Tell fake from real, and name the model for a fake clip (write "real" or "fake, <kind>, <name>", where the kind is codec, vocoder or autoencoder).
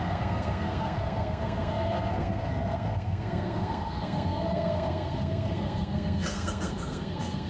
fake, codec, SNAC